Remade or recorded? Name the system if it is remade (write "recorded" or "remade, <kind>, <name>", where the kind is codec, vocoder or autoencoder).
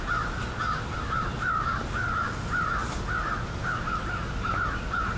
recorded